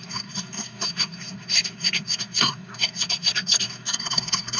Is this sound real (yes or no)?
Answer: no